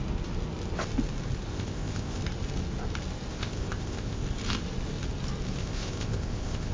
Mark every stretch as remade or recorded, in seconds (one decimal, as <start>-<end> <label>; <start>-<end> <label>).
0.0-1.5 recorded; 1.5-2.2 remade; 2.2-3.3 recorded; 3.3-4.2 remade; 4.2-5.6 recorded; 5.6-6.7 remade